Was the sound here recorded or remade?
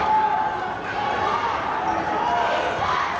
recorded